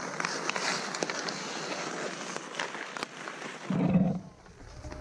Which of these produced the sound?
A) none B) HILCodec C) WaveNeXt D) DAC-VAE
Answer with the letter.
A